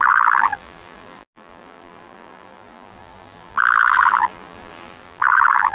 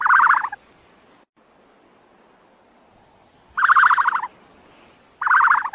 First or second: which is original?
second